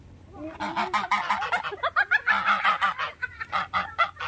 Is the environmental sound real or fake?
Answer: real